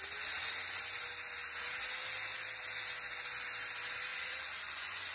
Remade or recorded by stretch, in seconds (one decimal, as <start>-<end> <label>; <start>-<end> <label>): 0.0-4.1 recorded; 4.1-5.1 remade